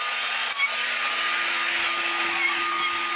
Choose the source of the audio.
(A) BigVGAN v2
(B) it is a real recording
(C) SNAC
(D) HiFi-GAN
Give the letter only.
B